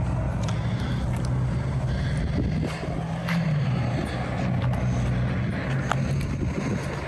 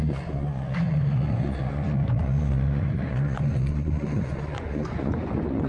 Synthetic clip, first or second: second